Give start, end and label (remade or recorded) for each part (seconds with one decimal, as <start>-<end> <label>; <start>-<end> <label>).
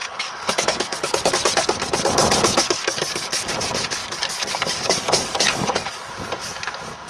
0.0-1.3 remade; 1.3-2.8 recorded; 2.8-3.5 remade; 3.5-4.0 recorded; 4.0-6.1 remade; 6.1-7.1 recorded